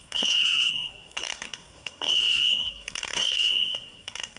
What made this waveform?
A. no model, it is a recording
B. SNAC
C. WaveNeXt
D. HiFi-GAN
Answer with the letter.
B